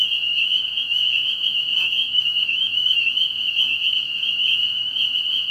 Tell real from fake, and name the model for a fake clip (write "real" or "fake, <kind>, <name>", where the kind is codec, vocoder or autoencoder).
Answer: fake, autoencoder, DAC-VAE